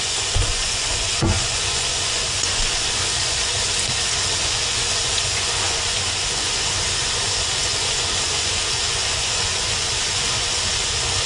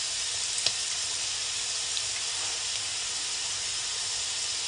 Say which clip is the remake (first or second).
first